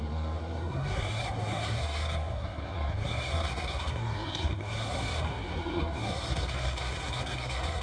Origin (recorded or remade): remade